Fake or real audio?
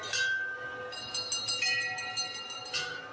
real